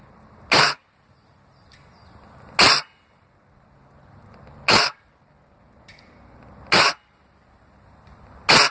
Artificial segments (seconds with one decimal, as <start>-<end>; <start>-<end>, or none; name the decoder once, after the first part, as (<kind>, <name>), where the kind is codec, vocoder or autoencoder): none